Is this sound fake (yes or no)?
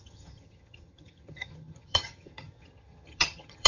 yes